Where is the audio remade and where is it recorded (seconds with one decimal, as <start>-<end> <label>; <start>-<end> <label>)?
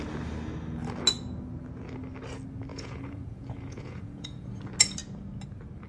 0.0-2.7 recorded; 2.7-4.6 remade; 4.6-5.9 recorded